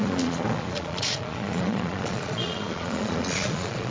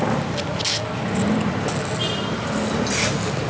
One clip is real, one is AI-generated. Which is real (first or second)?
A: second